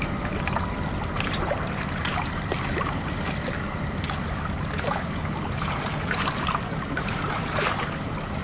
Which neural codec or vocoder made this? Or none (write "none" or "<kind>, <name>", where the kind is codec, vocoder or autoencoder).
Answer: vocoder, BigVGAN v2